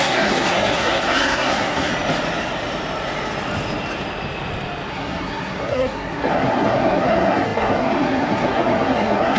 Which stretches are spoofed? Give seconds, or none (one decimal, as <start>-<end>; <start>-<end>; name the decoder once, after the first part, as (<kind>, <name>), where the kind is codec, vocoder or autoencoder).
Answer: 0.0-1.9 (codec, SNAC); 4.9-9.4

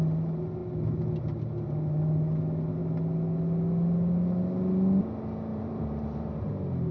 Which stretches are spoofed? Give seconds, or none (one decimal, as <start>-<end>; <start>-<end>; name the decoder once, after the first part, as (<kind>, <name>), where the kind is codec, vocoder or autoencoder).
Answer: 5.5-6.5 (vocoder, BigVGAN v2)

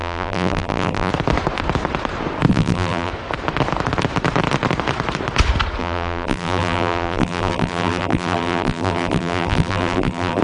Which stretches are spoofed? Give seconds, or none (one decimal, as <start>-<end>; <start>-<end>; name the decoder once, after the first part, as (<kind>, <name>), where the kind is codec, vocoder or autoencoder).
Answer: 0.0-1.1 (vocoder, BigVGAN v2); 2.5-3.1; 5.8-10.4

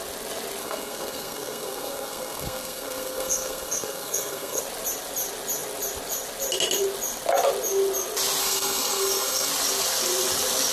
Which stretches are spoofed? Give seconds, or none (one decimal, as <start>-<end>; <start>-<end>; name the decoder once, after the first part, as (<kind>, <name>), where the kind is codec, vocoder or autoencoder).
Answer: 0.6-4.6 (codec, SNAC); 8.4-9.5

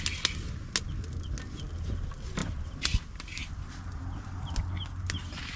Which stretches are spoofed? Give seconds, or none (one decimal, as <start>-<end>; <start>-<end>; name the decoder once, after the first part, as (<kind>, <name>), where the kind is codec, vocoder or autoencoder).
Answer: none

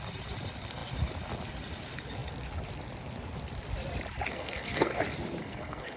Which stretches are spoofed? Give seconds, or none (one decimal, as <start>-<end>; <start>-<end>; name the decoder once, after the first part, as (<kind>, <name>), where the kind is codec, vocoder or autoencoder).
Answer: 4.3-5.0 (codec, SNAC); 5.4-6.0

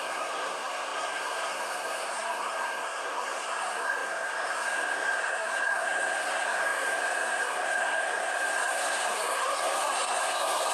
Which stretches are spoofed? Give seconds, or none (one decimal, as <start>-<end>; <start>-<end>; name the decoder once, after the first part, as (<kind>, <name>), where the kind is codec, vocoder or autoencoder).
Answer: 0.0-10.7 (codec, SNAC)